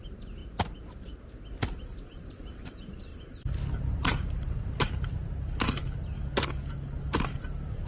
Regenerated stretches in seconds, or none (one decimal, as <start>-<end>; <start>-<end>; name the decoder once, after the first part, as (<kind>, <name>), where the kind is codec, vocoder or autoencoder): 0.0-0.4 (vocoder, BigVGAN v2); 2.0-3.1; 3.9-5.2; 7.1-7.9